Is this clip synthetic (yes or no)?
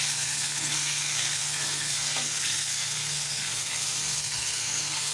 yes